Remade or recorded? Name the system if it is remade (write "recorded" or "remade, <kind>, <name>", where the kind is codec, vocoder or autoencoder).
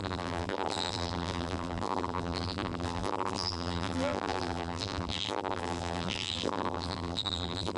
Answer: remade, vocoder, BigVGAN v2